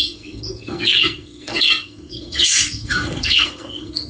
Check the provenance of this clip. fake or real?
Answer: fake